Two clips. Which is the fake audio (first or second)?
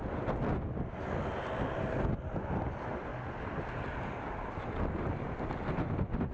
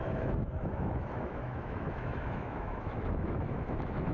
second